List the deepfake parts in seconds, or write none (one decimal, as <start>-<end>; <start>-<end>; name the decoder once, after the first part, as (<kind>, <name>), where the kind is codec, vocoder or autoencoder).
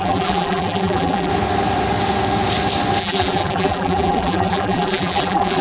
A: 0.0-1.3 (vocoder, BigVGAN v2); 3.0-5.6